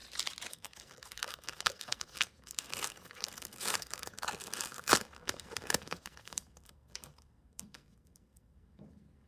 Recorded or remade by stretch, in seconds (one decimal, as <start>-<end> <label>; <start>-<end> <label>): 0.0-0.5 recorded; 0.5-9.3 remade

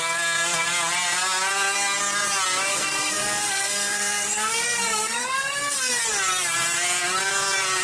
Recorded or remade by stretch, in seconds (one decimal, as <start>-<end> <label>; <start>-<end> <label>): 0.0-2.7 recorded; 2.7-6.0 remade; 6.0-7.8 recorded

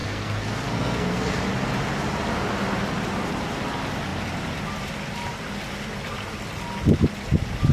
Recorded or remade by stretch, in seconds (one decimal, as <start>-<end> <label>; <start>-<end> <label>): 0.0-1.4 remade; 1.4-7.7 recorded